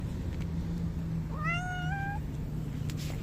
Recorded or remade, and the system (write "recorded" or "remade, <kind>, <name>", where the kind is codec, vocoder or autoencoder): recorded